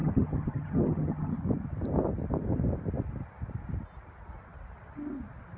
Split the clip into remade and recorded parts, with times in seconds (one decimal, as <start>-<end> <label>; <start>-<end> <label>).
0.0-1.3 remade; 1.3-5.6 recorded